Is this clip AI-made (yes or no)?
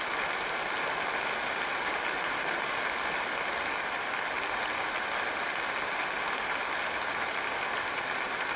no